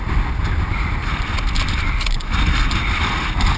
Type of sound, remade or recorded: recorded